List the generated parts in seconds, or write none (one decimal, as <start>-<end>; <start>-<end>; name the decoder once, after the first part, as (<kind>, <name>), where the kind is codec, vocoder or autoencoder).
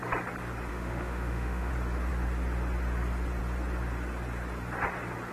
0.7-1.7 (autoencoder, DAC-VAE)